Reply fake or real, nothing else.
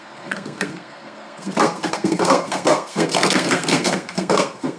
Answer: fake